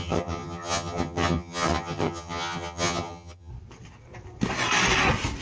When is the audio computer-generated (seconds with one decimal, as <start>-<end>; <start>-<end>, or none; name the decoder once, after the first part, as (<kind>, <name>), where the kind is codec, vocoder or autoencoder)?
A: 0.0-3.5 (vocoder, HiFi-GAN)